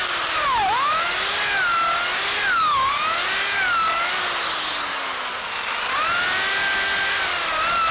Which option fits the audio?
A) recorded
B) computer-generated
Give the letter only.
A